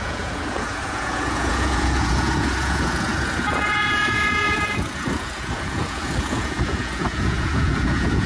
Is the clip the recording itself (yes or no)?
no